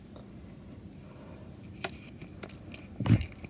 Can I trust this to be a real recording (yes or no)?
yes